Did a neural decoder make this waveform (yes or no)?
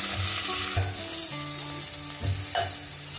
no